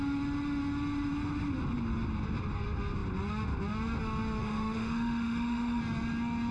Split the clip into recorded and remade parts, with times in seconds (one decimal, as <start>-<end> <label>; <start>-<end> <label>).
0.0-4.4 recorded; 4.4-5.8 remade; 5.8-6.5 recorded